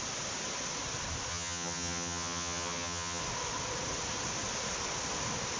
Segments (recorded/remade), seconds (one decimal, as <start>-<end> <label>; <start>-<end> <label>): 0.0-1.3 recorded; 1.3-3.2 remade; 3.2-5.6 recorded